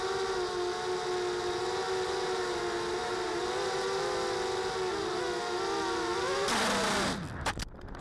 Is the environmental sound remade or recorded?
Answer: recorded